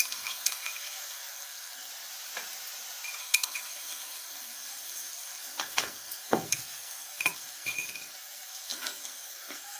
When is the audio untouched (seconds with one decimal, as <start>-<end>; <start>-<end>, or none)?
1.9-3.2